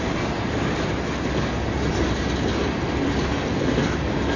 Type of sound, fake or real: real